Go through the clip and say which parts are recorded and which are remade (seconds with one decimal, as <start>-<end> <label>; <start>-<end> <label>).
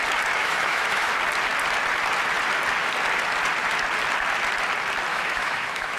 0.0-0.4 recorded; 0.4-1.1 remade; 1.1-5.1 recorded; 5.1-6.0 remade